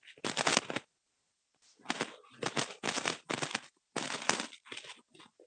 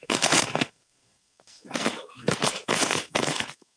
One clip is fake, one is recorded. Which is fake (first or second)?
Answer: second